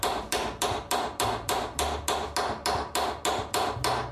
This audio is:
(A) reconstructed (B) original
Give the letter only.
B